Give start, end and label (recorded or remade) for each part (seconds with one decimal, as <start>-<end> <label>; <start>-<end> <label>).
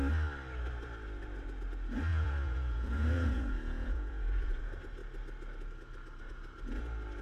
0.0-2.1 recorded; 2.1-4.6 remade; 4.6-7.2 recorded